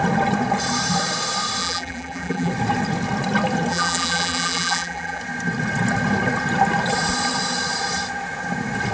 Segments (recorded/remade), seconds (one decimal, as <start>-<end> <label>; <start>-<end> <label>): 0.0-1.6 recorded; 1.6-2.5 remade; 2.5-3.7 recorded; 3.7-5.2 remade; 5.2-8.9 recorded